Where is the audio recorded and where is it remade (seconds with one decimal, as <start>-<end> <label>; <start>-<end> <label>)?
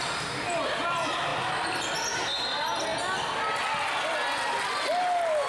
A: 0.0-5.5 recorded